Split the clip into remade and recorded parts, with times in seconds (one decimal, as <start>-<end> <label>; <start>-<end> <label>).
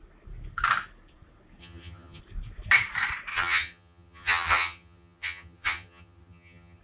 0.0-1.6 recorded; 1.6-2.2 remade; 2.2-3.3 recorded; 3.3-6.8 remade